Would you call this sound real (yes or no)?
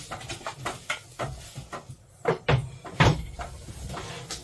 yes